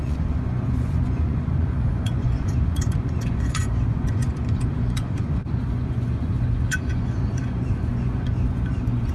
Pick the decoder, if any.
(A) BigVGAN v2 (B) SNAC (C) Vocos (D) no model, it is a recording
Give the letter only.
C